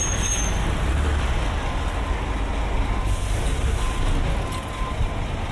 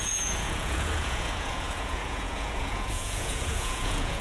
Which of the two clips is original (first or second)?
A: first